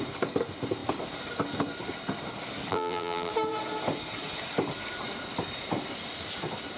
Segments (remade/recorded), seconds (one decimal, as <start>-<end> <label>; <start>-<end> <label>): 0.0-2.7 recorded; 2.7-3.3 remade; 3.3-6.8 recorded